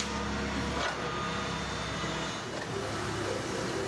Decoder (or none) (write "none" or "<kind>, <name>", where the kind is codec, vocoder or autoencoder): none